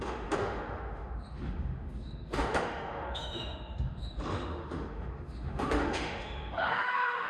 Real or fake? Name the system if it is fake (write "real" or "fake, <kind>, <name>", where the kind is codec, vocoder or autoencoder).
fake, autoencoder, DAC-VAE